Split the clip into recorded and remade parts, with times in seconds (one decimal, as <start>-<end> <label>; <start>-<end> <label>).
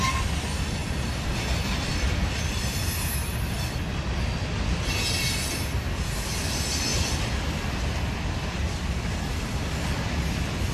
0.0-10.7 recorded